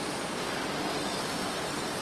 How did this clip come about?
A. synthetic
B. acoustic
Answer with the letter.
B